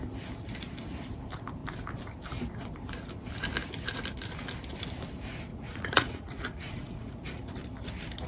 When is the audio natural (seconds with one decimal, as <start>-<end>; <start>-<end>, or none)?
0.0-5.5; 7.5-8.3